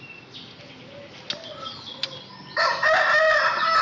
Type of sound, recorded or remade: recorded